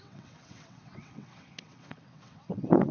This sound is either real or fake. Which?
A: fake